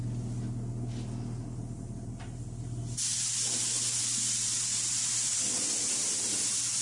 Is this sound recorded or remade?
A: recorded